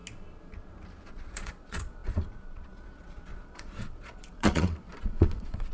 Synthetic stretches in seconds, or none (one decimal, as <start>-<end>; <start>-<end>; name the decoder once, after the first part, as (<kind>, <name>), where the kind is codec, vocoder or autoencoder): 1.1-5.7 (vocoder, Vocos)